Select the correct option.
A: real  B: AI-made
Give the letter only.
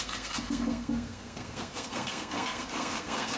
B